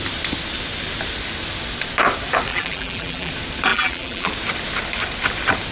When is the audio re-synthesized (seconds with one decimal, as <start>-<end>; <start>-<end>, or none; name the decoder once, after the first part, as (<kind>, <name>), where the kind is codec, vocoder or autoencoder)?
2.5-3.3 (vocoder, BigVGAN v2); 3.7-4.3